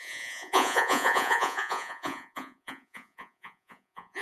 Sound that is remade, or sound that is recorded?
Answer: remade